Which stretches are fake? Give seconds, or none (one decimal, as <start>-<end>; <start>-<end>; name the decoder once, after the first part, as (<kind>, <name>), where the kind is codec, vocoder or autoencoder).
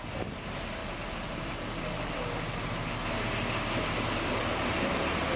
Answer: none